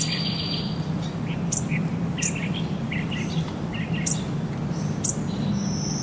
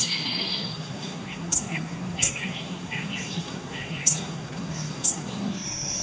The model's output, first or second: second